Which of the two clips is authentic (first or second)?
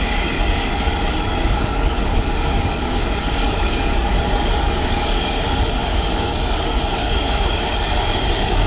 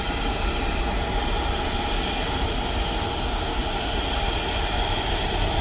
second